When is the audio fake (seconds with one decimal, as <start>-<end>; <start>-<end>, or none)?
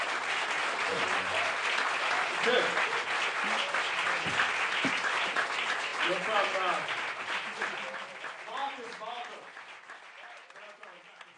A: none